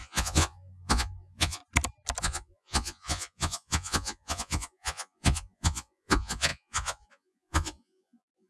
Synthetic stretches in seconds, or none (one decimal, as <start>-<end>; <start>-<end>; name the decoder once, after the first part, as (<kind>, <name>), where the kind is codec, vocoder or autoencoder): 0.0-1.6 (vocoder, Vocos); 2.2-8.5